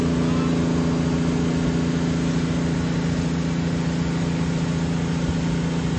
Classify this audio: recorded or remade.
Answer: recorded